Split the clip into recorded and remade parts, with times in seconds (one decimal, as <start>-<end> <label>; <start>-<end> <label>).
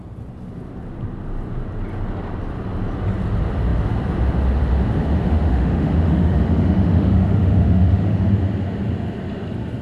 0.0-5.2 recorded; 5.2-8.3 remade; 8.3-9.8 recorded